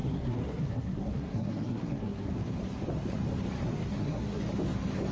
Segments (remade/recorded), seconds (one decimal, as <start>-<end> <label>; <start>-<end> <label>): 0.0-2.3 remade; 2.3-3.6 recorded; 3.6-4.4 remade; 4.4-5.1 recorded